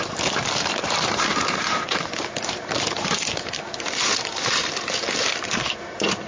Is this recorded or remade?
remade